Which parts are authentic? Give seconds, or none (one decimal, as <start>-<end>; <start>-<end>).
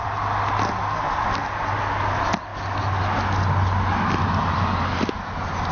0.0-5.7